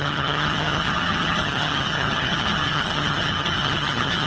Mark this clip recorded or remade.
remade